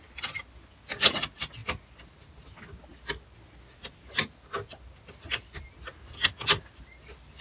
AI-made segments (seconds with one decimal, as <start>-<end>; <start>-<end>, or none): none

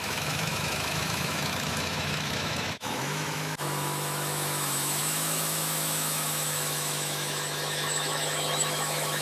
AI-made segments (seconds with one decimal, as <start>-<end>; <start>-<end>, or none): 0.0-9.2

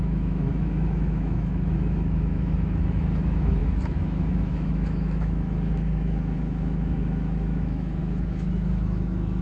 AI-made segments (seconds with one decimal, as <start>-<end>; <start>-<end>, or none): 0.0-9.4

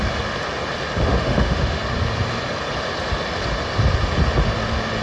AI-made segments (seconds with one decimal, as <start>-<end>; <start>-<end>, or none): 1.1-1.8

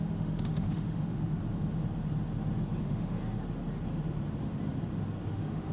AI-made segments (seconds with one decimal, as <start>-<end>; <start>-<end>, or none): 0.0-1.4; 2.8-3.2; 5.3-5.7